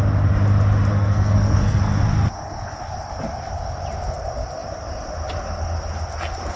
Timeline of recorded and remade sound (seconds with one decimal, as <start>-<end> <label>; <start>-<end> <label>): 0.0-0.9 recorded; 0.9-1.8 remade; 1.8-6.6 recorded